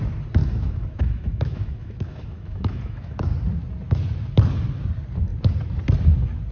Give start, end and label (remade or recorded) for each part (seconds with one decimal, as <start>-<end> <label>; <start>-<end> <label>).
0.0-0.4 recorded; 0.4-3.3 remade; 3.3-6.5 recorded